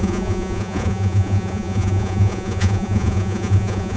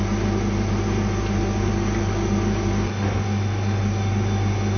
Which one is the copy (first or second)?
first